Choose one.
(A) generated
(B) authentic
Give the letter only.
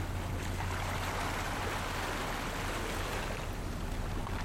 B